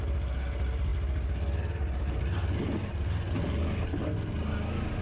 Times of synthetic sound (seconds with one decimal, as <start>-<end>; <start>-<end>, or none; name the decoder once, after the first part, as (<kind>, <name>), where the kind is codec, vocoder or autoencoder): none

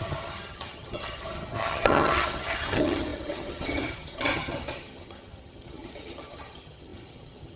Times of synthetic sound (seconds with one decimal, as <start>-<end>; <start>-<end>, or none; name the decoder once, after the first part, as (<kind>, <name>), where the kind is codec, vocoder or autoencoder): 0.0-7.6 (vocoder, HiFi-GAN)

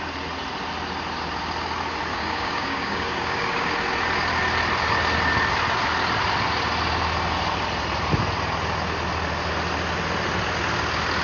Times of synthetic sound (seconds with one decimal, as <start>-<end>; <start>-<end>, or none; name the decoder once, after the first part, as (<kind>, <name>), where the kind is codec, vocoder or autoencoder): 2.1-3.7 (codec, DAC)

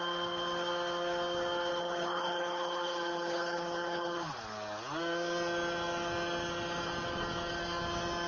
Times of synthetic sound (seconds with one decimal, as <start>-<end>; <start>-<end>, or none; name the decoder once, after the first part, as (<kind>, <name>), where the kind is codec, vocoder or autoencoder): 1.7-4.3 (codec, HILCodec)